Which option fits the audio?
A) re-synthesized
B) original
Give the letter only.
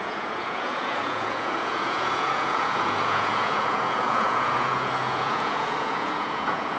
A